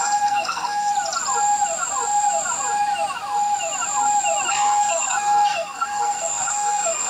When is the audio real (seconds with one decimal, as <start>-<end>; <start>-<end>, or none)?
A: 0.9-4.5